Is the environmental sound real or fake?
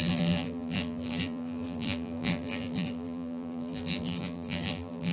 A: fake